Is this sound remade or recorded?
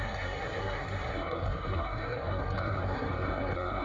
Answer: remade